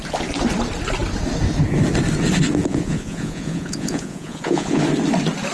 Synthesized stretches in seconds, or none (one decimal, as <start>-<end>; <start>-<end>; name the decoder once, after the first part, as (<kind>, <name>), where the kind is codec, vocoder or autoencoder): 2.6-4.8 (vocoder, Vocos)